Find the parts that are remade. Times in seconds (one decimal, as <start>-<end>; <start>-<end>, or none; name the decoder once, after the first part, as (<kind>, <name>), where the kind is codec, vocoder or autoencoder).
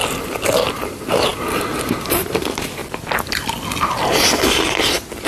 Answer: 0.9-2.8 (vocoder, BigVGAN v2)